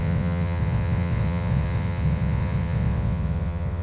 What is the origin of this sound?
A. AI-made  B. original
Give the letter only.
A